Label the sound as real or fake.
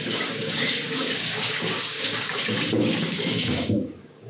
fake